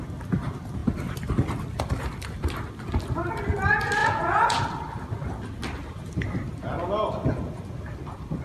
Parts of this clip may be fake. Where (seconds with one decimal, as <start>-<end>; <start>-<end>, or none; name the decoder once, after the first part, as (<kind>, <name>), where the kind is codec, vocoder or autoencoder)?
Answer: 4.0-4.6 (vocoder, Vocos)